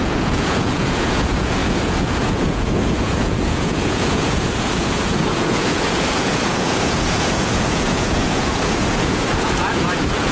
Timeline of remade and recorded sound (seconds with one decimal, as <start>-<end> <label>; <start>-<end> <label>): 0.0-10.3 remade